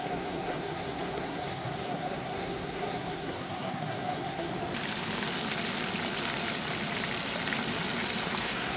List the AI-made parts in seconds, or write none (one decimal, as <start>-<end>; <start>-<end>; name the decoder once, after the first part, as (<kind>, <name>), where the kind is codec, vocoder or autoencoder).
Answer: 0.0-4.5 (codec, SNAC); 8.4-8.8